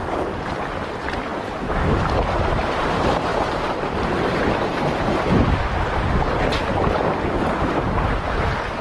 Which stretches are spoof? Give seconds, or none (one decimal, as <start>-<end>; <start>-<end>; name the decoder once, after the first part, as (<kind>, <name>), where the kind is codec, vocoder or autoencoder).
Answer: 3.3-5.6 (vocoder, BigVGAN v2)